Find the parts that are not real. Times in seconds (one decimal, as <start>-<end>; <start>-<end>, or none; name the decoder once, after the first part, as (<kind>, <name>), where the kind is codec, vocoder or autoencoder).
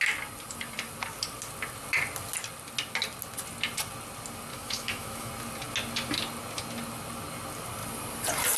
4.5-5.3 (autoencoder, DAC-VAE)